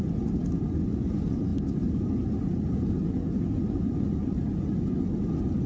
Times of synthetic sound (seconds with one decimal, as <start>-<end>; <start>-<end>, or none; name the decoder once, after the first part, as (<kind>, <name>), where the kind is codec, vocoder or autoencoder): none